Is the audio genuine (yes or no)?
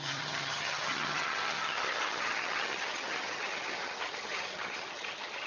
no